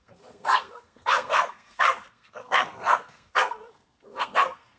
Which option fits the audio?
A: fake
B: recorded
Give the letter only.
A